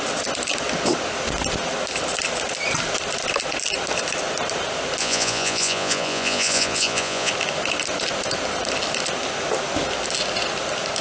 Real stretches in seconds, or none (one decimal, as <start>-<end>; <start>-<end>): 0.0-5.0; 7.3-11.0